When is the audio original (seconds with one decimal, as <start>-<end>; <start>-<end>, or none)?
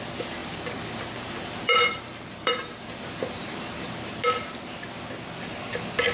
0.0-0.4; 4.1-6.1